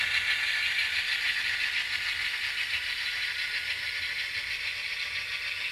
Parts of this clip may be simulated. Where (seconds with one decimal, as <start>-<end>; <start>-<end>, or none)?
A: none